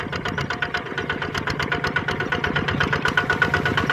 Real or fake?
real